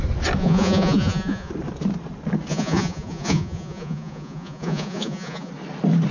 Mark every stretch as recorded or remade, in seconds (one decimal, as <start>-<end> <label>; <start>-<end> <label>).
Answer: 0.0-0.4 recorded; 0.4-1.5 remade; 1.5-2.5 recorded; 2.5-5.5 remade; 5.5-6.1 recorded